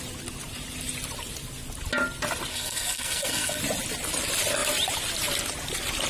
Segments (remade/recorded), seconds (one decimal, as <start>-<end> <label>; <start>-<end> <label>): 0.0-2.5 recorded; 2.5-3.6 remade; 3.6-6.1 recorded